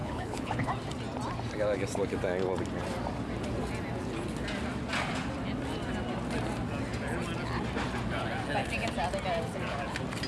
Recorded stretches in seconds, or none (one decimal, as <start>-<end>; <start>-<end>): 0.7-10.3